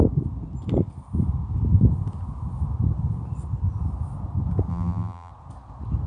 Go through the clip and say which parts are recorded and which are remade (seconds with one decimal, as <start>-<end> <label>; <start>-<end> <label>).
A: 0.0-4.7 recorded; 4.7-5.3 remade; 5.3-6.1 recorded